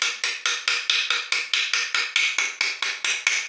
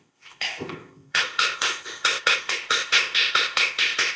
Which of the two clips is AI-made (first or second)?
second